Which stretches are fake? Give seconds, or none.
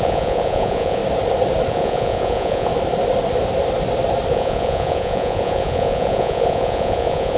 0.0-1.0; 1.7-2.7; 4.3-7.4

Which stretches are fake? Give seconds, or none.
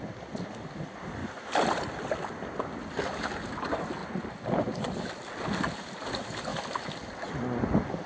none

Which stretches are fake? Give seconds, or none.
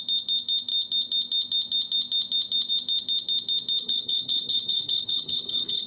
3.8-5.9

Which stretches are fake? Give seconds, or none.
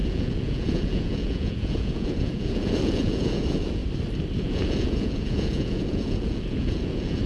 0.0-3.8; 4.4-7.3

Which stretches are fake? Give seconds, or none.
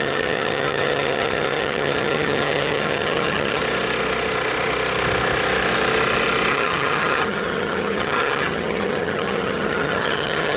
0.0-3.6; 6.5-10.6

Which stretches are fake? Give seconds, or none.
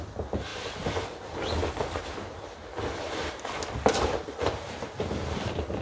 none